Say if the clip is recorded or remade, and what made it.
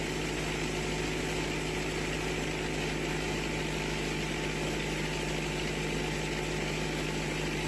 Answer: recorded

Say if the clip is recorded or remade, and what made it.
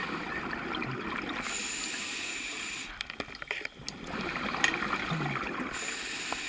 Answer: recorded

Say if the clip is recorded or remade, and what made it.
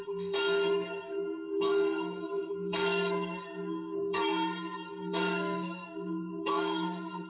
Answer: remade, codec, SNAC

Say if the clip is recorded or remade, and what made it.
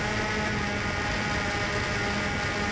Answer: recorded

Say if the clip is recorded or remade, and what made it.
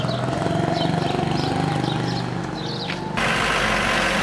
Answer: recorded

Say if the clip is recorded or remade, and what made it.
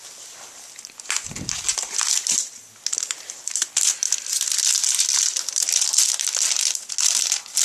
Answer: recorded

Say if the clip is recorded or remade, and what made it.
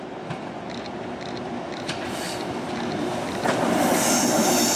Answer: recorded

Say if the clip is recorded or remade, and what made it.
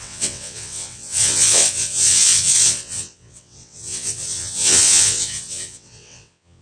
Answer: remade, vocoder, WaveNeXt